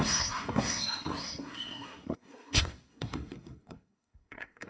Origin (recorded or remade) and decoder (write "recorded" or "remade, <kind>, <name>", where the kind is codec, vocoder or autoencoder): remade, codec, SNAC